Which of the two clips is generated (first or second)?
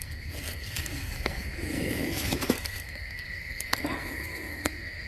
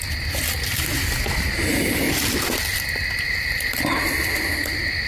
first